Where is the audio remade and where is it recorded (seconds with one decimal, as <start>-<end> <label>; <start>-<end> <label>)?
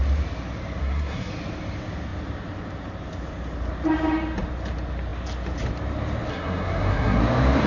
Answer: 0.0-0.8 recorded; 0.8-1.3 remade; 1.3-6.3 recorded; 6.3-7.2 remade; 7.2-7.7 recorded